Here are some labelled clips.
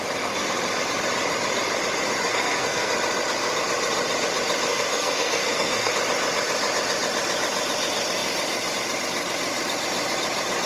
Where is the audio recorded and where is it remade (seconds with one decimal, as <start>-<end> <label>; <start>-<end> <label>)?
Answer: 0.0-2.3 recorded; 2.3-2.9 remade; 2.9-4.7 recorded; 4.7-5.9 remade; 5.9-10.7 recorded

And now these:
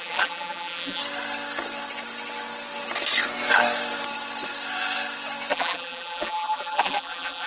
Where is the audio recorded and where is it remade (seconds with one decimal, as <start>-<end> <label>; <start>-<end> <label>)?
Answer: 0.0-1.0 remade; 1.0-5.5 recorded; 5.5-7.5 remade

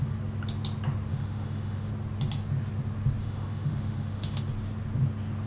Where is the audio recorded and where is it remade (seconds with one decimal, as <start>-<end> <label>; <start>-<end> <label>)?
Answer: 0.0-1.1 recorded; 1.1-1.9 remade; 1.9-3.2 recorded; 3.2-4.4 remade; 4.4-5.5 recorded

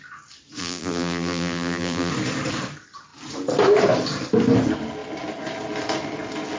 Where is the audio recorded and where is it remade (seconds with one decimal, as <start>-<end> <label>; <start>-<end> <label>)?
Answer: 0.0-0.6 recorded; 0.6-2.1 remade; 2.1-6.6 recorded

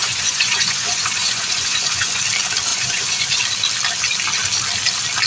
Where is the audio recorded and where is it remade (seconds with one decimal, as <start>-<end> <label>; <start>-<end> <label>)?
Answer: 0.0-2.2 remade; 2.2-2.7 recorded; 2.7-3.4 remade; 3.4-5.3 recorded

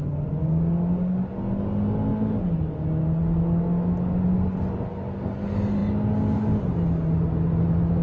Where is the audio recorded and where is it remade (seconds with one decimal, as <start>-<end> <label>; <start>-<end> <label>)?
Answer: 0.0-0.4 recorded; 0.4-1.3 remade; 1.3-8.0 recorded